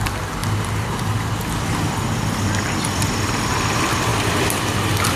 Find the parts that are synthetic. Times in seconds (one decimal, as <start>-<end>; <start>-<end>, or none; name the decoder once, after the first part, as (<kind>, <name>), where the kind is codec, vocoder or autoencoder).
4.1-4.6 (vocoder, BigVGAN v2)

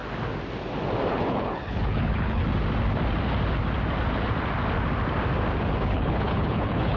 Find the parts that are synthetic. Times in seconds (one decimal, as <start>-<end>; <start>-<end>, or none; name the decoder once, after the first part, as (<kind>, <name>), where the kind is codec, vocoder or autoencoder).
1.1-2.4 (codec, HILCodec); 5.8-7.0

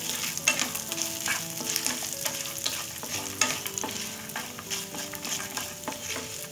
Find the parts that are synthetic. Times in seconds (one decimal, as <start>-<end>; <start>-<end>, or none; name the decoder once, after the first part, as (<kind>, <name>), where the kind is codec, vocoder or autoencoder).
none

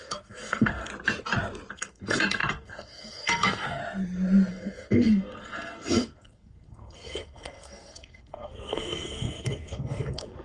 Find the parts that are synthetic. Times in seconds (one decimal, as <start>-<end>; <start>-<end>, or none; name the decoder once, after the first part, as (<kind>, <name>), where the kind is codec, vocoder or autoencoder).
0.0-0.9 (codec, SNAC); 1.7-3.8; 4.5-10.4

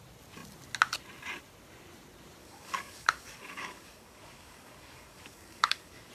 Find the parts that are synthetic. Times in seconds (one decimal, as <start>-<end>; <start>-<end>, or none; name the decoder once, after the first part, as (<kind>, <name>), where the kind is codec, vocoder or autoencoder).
2.4-6.1 (codec, DAC)

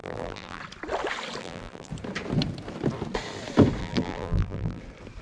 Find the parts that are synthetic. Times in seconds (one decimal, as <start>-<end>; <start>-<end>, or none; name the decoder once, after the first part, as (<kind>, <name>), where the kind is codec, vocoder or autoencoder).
0.0-0.6 (vocoder, BigVGAN v2); 1.4-1.9; 3.8-4.8

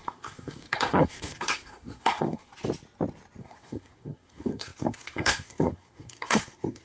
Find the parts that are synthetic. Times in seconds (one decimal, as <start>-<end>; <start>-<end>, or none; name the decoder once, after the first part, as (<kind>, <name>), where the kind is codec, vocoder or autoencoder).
0.0-2.5 (codec, SNAC); 3.4-6.8

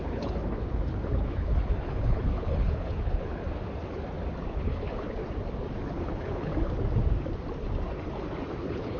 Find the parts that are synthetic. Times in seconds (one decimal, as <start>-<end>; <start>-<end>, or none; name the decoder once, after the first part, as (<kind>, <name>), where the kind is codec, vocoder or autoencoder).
0.0-3.4 (codec, HILCodec); 4.5-5.2; 5.9-6.5; 8.6-9.0